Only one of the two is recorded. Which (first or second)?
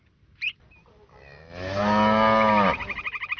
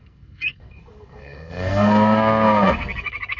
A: first